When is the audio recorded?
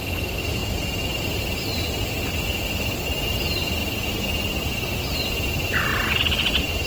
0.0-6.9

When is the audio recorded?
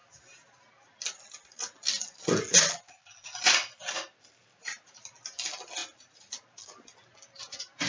0.0-4.4; 5.1-5.8; 6.6-7.9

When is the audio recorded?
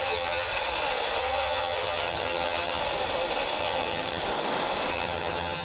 0.5-1.2; 2.8-3.6; 4.2-4.9